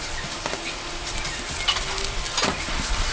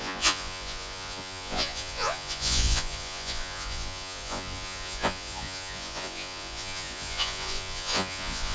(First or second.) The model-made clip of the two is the second